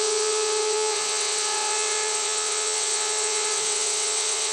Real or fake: fake